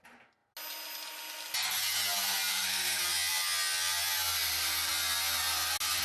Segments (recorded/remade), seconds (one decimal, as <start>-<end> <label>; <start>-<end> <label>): 0.0-2.5 recorded; 2.5-3.0 remade; 3.0-6.0 recorded